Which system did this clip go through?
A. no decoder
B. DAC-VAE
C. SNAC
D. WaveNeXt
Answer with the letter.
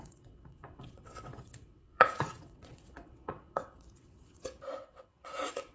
D